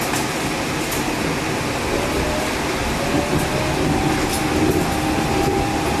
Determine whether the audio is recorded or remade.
recorded